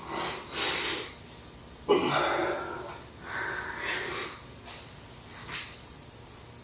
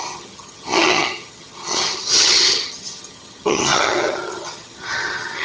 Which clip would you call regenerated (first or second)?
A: second